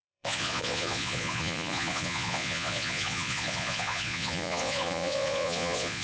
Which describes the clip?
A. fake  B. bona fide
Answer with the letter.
A